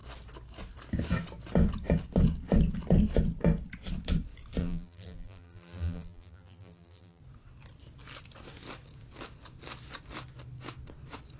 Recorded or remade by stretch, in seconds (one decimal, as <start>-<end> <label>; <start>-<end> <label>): 0.0-4.6 recorded; 4.6-7.2 remade; 7.2-11.4 recorded